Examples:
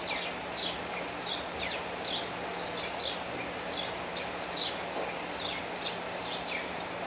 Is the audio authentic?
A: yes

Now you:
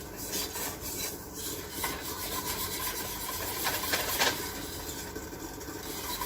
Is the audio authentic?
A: yes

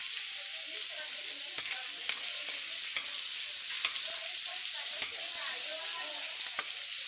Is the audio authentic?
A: yes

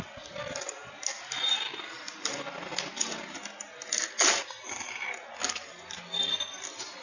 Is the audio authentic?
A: yes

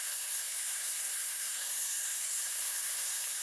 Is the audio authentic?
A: no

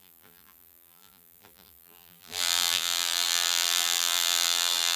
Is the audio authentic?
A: no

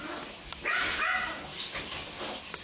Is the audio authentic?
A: yes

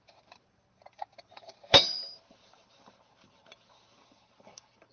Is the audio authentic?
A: no